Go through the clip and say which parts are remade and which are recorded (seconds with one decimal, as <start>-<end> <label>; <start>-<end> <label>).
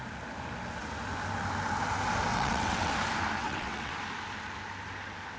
0.0-2.3 recorded; 2.3-2.9 remade; 2.9-3.4 recorded; 3.4-3.9 remade; 3.9-5.4 recorded